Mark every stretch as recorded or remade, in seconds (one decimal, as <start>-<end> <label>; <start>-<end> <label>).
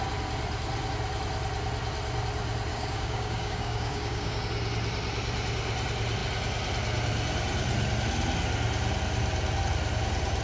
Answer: 0.0-2.7 recorded; 2.7-4.4 remade; 4.4-10.4 recorded